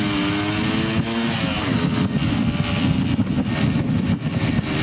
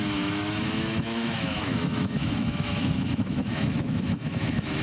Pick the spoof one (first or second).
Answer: second